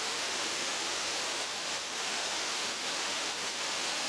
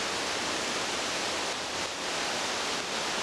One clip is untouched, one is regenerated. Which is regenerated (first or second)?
first